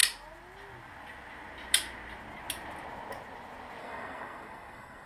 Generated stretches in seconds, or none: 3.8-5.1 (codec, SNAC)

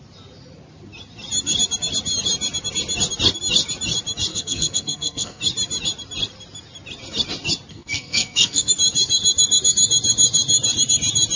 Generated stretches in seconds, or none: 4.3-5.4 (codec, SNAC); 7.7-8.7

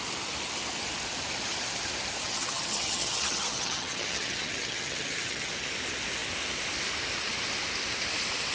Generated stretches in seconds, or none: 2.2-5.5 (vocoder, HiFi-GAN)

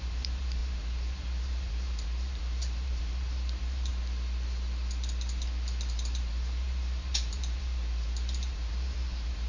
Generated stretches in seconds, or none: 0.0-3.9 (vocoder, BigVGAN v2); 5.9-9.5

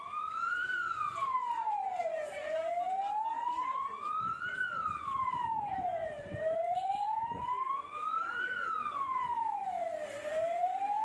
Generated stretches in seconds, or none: 0.0-2.7 (vocoder, Vocos); 3.3-11.0

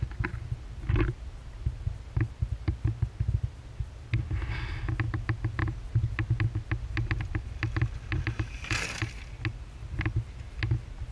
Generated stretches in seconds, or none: none